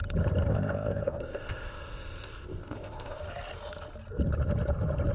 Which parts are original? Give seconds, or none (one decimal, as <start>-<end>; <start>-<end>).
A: 0.0-0.5; 3.2-5.1